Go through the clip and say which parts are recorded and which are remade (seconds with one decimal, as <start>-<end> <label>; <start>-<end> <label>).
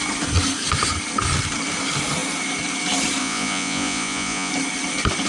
0.0-3.2 recorded; 3.2-4.5 remade; 4.5-5.3 recorded